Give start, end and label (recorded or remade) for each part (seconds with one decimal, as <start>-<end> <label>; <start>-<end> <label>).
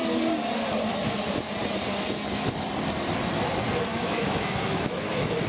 0.0-3.9 recorded; 3.9-5.5 remade